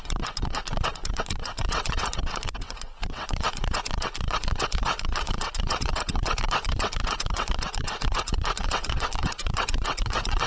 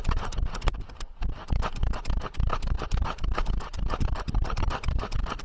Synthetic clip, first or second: first